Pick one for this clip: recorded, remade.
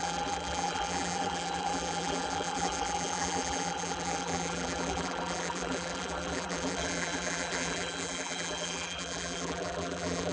remade